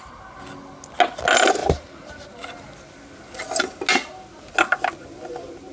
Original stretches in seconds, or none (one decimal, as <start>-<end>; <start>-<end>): 0.0-1.6; 2.1-5.7